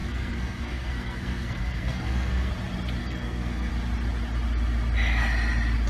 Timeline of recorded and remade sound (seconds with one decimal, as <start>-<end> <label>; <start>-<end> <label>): 0.0-2.5 remade; 2.5-3.0 recorded; 3.0-3.7 remade; 3.7-5.9 recorded

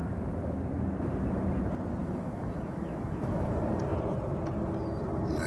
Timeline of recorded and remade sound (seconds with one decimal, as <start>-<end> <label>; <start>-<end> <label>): 0.0-0.6 remade; 0.6-2.0 recorded; 2.0-3.6 remade; 3.6-5.5 recorded